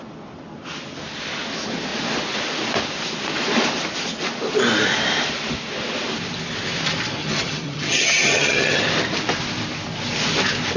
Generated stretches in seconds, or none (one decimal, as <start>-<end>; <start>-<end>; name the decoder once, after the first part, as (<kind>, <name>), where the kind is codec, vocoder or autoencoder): 7.2-8.8 (vocoder, HiFi-GAN)